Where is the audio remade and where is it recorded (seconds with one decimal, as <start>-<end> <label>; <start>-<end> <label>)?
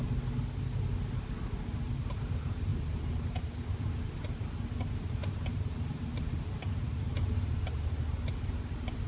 0.0-9.1 recorded